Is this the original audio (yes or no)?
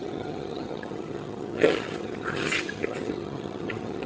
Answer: no